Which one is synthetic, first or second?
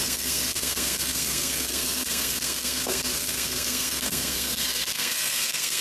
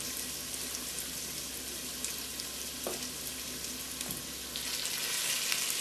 first